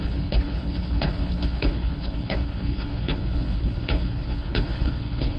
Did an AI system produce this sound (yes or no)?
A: yes